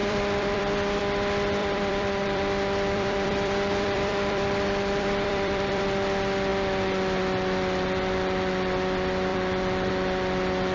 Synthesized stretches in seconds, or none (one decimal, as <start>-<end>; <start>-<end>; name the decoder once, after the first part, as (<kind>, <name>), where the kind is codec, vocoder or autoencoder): 0.0-1.0 (vocoder, BigVGAN v2); 1.6-5.8; 9.3-9.9